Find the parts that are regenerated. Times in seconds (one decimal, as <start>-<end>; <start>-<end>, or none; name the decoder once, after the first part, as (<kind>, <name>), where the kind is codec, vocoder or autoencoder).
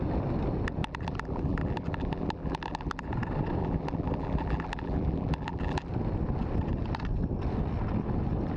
0.8-3.1 (vocoder, BigVGAN v2); 3.6-5.9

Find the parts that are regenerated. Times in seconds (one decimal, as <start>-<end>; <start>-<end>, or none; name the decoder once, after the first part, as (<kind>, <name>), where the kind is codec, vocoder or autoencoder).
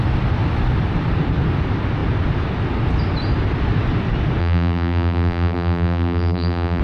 4.4-6.8 (vocoder, BigVGAN v2)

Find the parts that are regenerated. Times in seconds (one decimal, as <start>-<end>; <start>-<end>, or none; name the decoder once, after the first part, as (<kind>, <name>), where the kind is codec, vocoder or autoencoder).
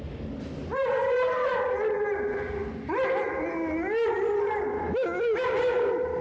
0.6-1.7 (vocoder, BigVGAN v2)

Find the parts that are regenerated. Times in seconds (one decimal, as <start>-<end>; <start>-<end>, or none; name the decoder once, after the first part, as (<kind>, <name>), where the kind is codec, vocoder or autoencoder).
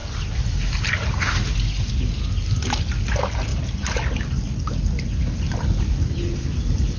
none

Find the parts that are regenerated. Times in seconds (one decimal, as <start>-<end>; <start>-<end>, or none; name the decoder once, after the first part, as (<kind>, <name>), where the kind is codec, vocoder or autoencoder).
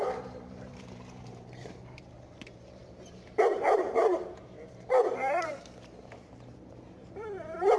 0.0-7.8 (vocoder, BigVGAN v2)